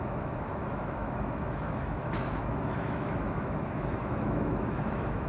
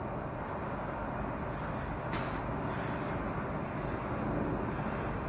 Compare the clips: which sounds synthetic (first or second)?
first